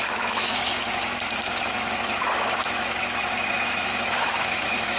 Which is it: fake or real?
fake